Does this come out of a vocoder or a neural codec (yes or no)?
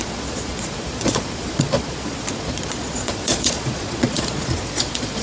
yes